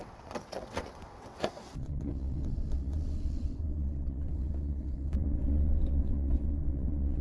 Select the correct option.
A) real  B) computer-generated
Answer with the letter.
B